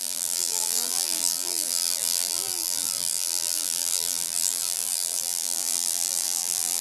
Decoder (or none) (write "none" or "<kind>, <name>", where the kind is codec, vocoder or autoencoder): vocoder, BigVGAN v2